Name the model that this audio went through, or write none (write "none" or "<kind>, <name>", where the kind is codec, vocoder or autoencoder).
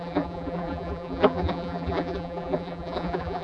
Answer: vocoder, BigVGAN v2